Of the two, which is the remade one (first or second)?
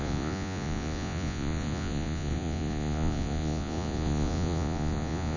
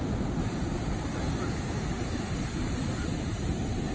first